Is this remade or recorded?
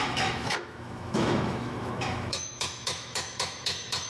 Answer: remade